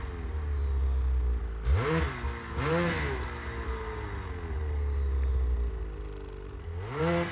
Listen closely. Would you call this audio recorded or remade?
recorded